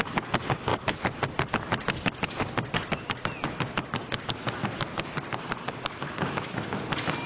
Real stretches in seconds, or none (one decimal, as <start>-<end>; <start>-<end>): 0.0-7.3